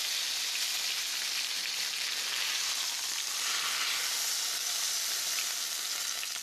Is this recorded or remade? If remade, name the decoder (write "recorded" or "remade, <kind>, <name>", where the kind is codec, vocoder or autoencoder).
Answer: recorded